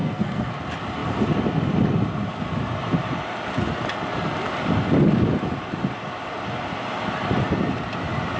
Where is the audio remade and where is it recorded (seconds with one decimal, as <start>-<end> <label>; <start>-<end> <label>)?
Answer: 0.0-0.5 remade; 0.5-8.4 recorded